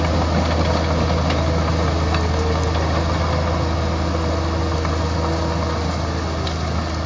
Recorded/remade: recorded